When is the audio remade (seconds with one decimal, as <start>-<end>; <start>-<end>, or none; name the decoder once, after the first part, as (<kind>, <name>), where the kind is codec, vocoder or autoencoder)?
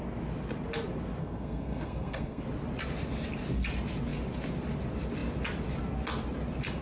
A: 1.2-2.4 (codec, SNAC)